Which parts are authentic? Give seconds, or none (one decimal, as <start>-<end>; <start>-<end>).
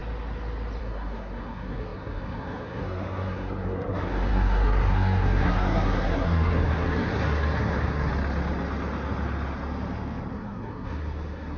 0.0-0.8; 8.1-10.3